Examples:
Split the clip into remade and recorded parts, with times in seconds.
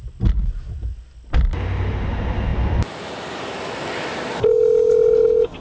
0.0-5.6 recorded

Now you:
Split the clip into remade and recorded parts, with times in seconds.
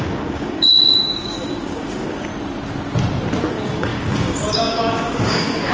0.0-2.3 remade; 2.3-3.5 recorded; 3.5-5.7 remade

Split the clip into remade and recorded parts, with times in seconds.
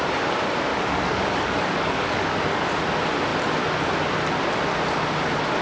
0.0-0.7 recorded; 0.7-2.7 remade; 2.7-5.6 recorded